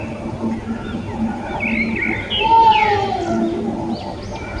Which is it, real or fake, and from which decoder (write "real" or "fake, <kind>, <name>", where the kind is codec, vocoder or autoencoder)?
real